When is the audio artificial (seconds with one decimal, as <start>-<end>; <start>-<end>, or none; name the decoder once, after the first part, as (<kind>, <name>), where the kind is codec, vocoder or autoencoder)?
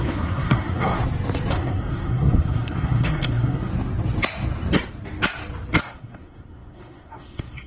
0.0-1.0 (codec, SNAC); 1.5-3.7; 5.8-7.7